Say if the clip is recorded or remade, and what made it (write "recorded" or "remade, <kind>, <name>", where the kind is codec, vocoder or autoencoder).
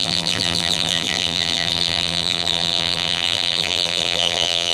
remade, vocoder, BigVGAN v2